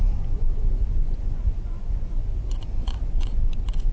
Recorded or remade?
remade